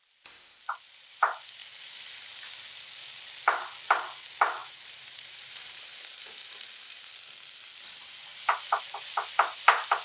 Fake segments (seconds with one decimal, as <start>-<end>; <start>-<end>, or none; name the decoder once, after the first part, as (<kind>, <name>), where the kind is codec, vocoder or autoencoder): 1.6-2.3 (vocoder, BigVGAN v2); 4.6-7.1